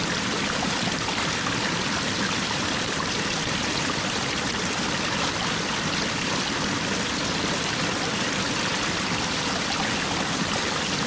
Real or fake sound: real